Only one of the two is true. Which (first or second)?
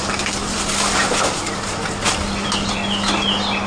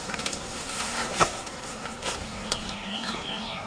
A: first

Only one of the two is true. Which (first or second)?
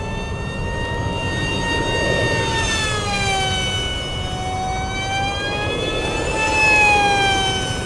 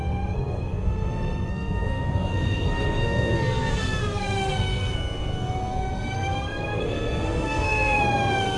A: first